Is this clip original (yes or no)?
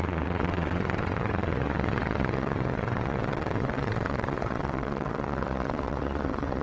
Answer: no